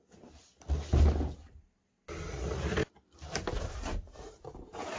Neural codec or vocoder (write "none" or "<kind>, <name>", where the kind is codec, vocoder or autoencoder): none